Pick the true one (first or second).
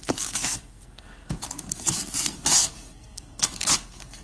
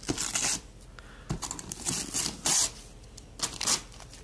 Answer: second